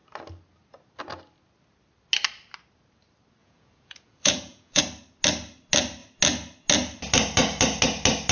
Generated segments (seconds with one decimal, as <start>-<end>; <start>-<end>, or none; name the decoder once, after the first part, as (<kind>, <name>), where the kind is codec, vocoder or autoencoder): 3.4-4.8 (vocoder, Vocos)